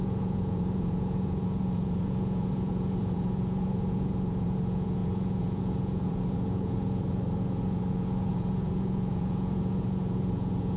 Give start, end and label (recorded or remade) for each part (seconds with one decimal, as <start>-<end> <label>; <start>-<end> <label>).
0.0-10.8 remade